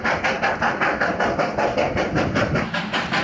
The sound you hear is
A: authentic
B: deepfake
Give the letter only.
A